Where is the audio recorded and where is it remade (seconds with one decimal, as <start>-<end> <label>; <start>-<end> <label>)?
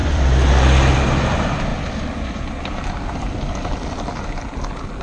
0.0-0.5 remade; 0.5-1.7 recorded; 1.7-2.5 remade; 2.5-5.0 recorded